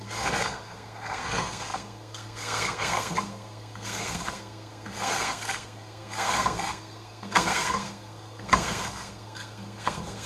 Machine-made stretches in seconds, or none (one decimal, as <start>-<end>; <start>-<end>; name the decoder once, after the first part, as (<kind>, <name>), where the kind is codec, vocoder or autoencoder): 0.0-10.3 (codec, SNAC)